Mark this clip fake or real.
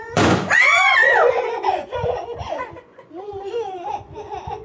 fake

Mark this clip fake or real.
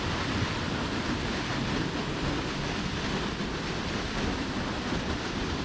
fake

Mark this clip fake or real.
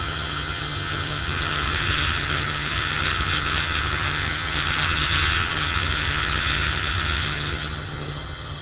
fake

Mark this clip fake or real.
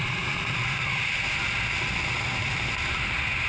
real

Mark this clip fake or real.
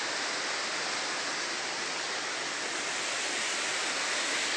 real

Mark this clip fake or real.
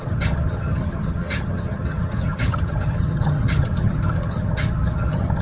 fake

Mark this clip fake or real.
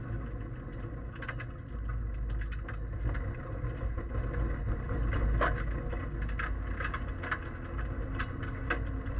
real